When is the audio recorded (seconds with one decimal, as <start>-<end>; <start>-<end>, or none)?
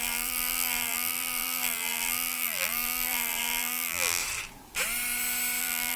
4.2-5.6